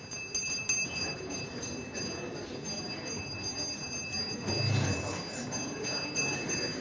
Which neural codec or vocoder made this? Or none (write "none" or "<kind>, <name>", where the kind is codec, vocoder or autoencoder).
none